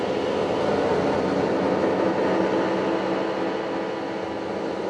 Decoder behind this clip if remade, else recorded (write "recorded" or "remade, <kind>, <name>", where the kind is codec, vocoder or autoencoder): recorded